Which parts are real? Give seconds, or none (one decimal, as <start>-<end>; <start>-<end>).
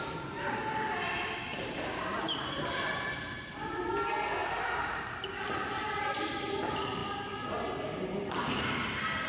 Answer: 0.0-1.5; 3.9-4.4; 6.2-9.3